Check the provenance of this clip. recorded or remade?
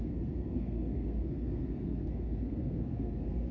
remade